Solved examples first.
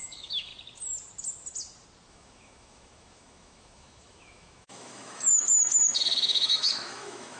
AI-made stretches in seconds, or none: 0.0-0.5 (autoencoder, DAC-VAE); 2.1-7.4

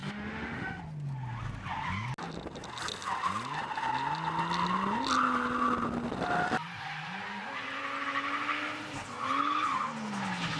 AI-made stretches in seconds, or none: 0.0-0.8 (autoencoder, DAC-VAE)

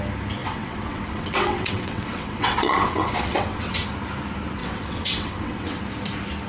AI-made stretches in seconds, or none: 0.4-3.9 (vocoder, WaveNeXt); 4.6-5.8

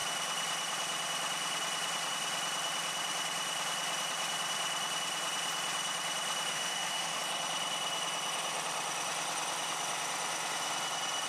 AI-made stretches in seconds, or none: 6.5-7.2 (autoencoder, DAC-VAE)